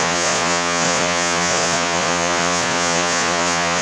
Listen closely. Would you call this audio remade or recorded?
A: remade